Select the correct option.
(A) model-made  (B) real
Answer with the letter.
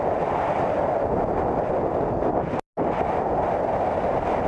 B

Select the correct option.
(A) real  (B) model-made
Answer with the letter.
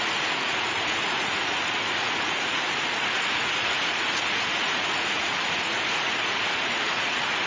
B